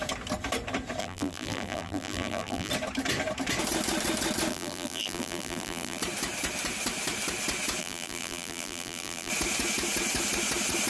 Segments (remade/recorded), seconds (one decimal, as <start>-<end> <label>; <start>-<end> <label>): 0.0-1.0 recorded; 1.0-2.7 remade; 2.7-4.5 recorded; 4.5-6.0 remade; 6.0-7.8 recorded; 7.8-9.3 remade; 9.3-10.9 recorded